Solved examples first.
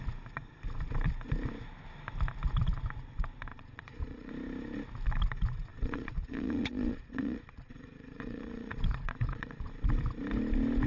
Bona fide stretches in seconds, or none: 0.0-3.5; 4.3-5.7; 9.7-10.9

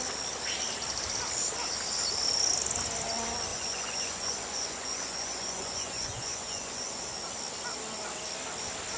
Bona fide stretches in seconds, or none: 0.0-3.5; 7.0-9.0

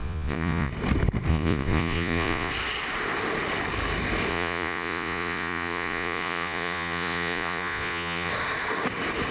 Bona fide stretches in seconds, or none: 0.7-1.3; 2.5-4.3; 8.3-9.3

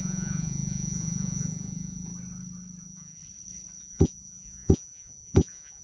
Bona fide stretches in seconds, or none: 2.1-2.8; 3.2-3.8

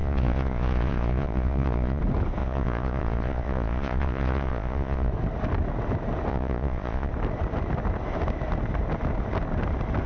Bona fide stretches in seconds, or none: 2.0-2.4; 5.1-6.3; 7.1-10.1